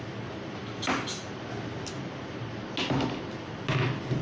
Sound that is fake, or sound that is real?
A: real